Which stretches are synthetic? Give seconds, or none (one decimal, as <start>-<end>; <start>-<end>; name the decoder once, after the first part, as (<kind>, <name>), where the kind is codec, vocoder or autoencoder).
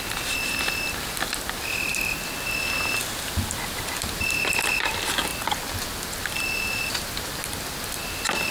none